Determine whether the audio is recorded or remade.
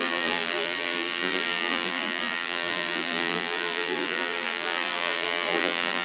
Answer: remade